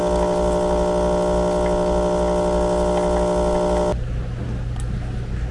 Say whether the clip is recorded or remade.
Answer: recorded